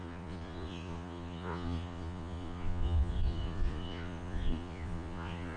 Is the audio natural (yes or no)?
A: no